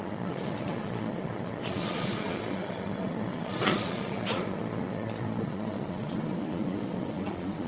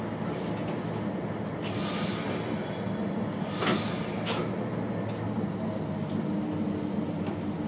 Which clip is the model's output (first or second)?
first